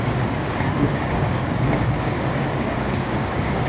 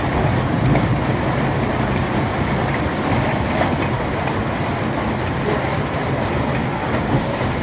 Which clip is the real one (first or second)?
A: second